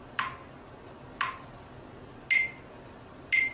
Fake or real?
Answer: real